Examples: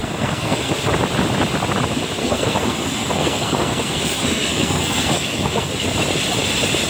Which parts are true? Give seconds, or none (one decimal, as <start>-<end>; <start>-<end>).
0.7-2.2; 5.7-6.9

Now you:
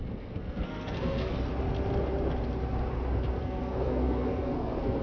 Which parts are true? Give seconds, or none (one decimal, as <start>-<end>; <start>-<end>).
1.3-3.4

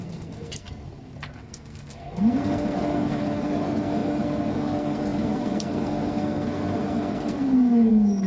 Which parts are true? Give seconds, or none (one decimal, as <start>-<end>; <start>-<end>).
none